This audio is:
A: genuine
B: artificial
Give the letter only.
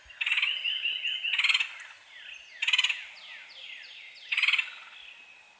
A